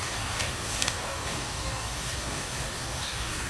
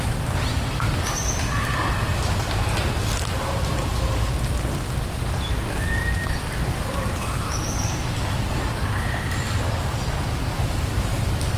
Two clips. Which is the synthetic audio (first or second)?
first